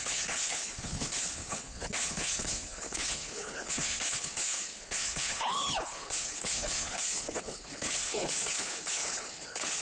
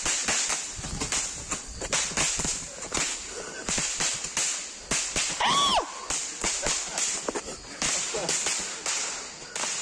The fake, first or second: first